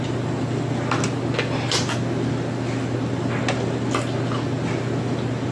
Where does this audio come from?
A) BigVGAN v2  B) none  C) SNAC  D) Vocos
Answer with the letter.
B